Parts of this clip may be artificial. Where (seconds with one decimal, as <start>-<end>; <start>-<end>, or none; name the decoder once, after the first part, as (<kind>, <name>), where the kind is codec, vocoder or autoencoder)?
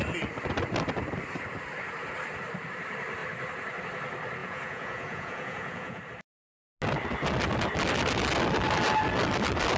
4.4-6.0 (vocoder, Vocos)